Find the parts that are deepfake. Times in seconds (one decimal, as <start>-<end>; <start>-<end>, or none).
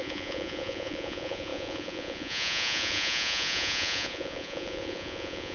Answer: 0.0-5.5